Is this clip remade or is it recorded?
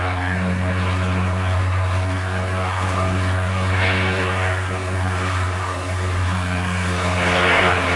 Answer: remade